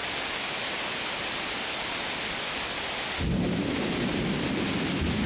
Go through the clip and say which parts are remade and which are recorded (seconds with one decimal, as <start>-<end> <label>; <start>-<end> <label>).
0.0-5.3 recorded